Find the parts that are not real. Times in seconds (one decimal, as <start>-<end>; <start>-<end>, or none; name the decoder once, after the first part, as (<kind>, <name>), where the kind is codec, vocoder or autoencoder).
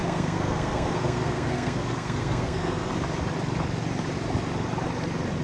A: 0.0-2.9 (codec, SNAC)